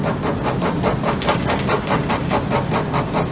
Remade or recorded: recorded